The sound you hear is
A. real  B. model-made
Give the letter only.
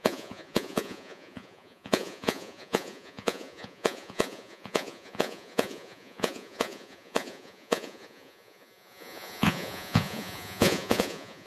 B